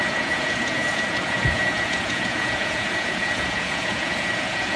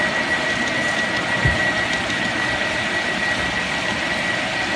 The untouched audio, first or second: second